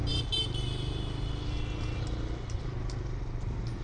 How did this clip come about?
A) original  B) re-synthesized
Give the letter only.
A